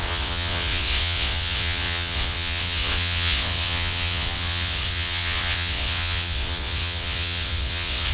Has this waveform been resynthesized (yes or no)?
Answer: yes